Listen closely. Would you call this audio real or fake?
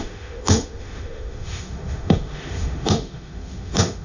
fake